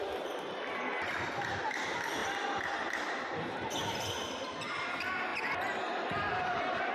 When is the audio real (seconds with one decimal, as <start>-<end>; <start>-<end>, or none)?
0.0-2.2; 3.2-5.3